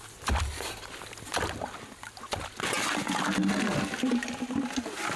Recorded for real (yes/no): yes